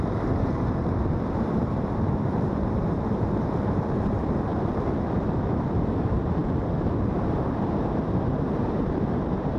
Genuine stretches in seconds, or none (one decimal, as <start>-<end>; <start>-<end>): 4.5-6.0; 6.4-7.6

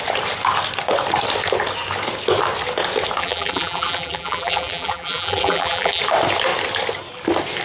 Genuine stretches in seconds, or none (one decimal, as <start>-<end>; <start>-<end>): 0.0-3.2; 6.0-7.6

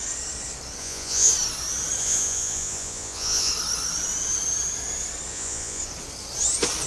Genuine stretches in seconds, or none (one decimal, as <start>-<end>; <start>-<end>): 0.0-0.8; 1.3-2.0; 3.5-5.3; 5.8-6.9

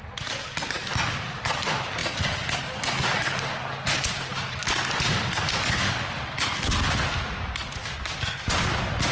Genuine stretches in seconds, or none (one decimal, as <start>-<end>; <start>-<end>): 0.0-9.1

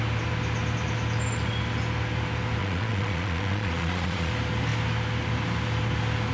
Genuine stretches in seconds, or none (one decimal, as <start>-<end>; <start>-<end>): 0.0-2.6; 4.3-6.3

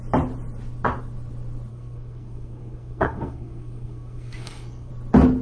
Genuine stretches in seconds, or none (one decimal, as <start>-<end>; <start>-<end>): 0.0-1.7; 4.9-5.4